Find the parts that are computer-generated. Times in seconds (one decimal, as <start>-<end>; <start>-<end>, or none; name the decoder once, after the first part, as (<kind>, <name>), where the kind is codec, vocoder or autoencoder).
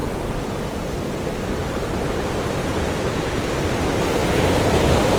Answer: 0.0-0.9 (vocoder, Vocos); 2.6-3.4; 4.2-4.8